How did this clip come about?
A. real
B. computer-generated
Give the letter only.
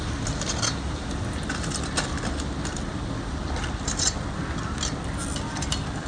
A